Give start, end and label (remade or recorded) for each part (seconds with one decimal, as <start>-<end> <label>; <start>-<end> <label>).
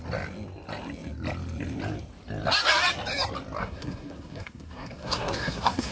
0.0-3.6 recorded; 3.6-5.9 remade